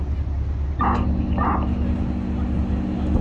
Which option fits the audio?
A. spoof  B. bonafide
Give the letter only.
B